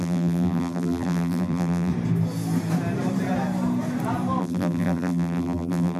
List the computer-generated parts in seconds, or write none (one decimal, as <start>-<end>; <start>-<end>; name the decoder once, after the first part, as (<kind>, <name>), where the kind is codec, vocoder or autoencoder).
0.0-1.9 (vocoder, BigVGAN v2); 4.4-6.0